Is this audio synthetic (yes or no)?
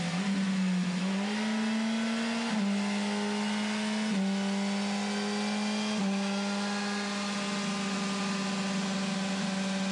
no